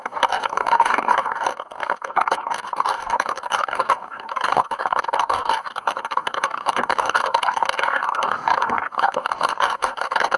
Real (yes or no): no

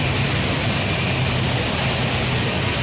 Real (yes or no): yes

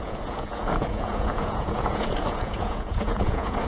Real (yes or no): no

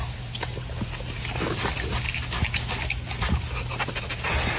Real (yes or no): yes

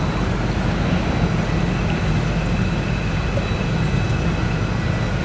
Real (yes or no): yes